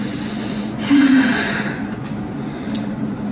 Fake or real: fake